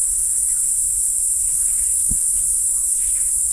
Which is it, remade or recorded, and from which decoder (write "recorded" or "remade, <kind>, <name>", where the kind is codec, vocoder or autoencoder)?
remade, autoencoder, DAC-VAE